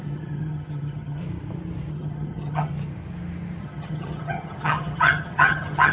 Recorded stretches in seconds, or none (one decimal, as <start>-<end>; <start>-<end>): 1.2-1.9; 2.7-3.6

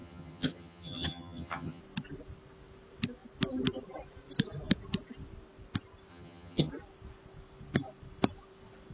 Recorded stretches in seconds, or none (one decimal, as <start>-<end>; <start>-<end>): 1.8-6.1; 6.7-8.9

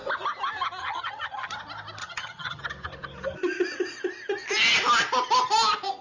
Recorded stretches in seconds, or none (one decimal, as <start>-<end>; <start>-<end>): 0.0-0.8; 1.5-2.0; 2.6-6.0

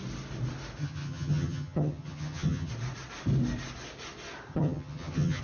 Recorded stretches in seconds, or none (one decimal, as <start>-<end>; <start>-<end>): 0.0-0.8; 2.7-4.5

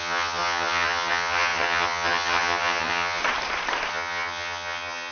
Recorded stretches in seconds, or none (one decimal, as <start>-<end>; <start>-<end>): 3.2-3.9

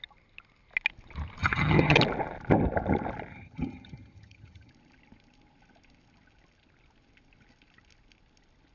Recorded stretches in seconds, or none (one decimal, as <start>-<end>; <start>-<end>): 0.0-1.4; 2.0-3.3; 4.7-8.7

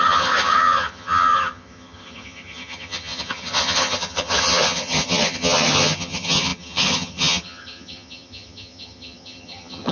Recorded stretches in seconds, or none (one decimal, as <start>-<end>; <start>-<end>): none